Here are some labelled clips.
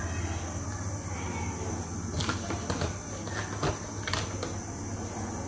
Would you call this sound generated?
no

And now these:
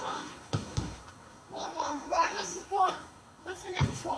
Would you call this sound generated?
yes